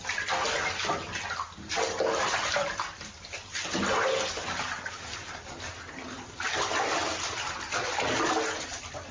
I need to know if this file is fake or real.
real